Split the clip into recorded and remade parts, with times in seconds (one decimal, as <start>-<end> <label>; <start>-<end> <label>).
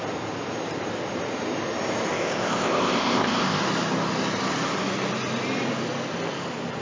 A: 0.0-2.1 recorded; 2.1-3.6 remade; 3.6-6.8 recorded